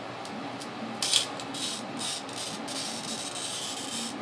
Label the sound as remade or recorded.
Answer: recorded